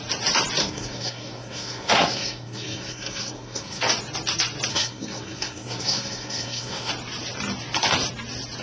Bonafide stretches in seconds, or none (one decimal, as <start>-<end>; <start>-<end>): 0.0-0.6; 3.8-4.7; 6.9-8.6